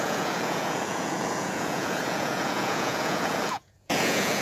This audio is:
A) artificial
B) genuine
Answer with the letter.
A